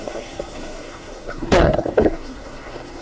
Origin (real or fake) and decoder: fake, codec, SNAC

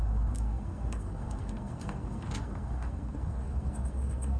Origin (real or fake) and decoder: fake, codec, SNAC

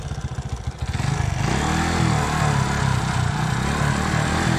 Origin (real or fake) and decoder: real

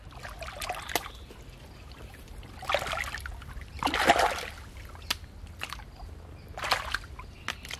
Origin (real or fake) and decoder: real